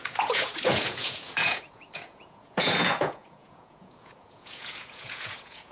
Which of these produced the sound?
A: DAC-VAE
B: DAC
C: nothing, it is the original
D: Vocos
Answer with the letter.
D